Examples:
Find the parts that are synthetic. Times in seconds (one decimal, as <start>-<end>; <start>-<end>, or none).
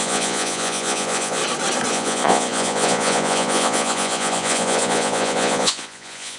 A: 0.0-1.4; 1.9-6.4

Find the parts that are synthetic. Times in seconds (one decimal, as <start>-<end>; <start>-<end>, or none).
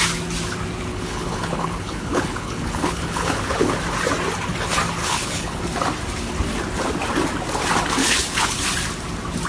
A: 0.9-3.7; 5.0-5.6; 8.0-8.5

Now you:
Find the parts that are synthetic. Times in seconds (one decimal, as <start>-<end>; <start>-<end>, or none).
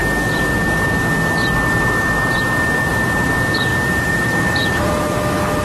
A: 3.7-4.9